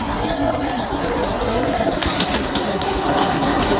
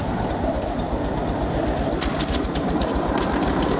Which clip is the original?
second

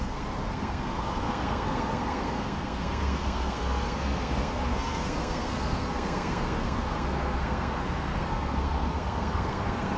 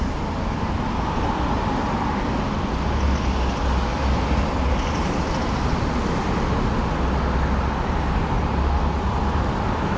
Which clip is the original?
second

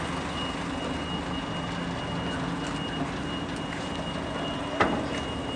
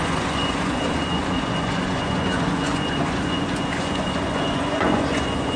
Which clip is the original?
first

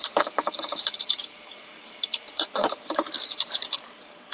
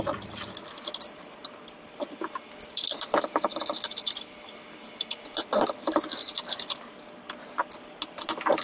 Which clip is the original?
second